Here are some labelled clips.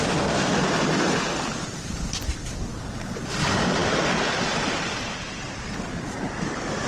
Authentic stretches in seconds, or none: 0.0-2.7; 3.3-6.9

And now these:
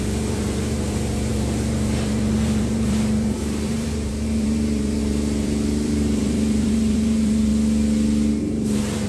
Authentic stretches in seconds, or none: 7.5-8.4